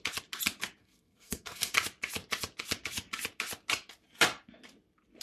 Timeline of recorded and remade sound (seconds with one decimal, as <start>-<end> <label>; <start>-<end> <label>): 0.0-0.8 recorded; 0.8-1.7 remade; 1.7-5.2 recorded